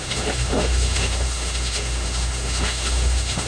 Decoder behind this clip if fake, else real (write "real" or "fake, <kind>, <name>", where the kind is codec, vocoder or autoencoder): fake, autoencoder, DAC-VAE